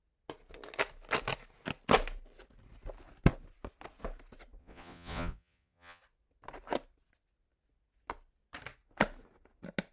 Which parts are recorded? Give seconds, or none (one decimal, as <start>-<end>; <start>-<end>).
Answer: 0.0-4.6; 6.0-9.9